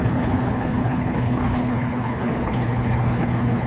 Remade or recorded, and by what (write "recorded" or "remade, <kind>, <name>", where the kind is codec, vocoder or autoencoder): remade, codec, HILCodec